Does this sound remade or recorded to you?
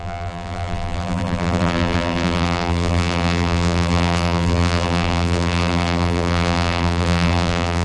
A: remade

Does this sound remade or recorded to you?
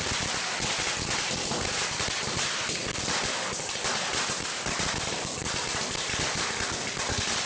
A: recorded